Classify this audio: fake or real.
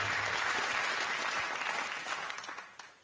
real